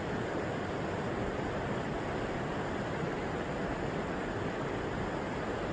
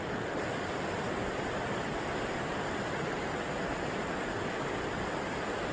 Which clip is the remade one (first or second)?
second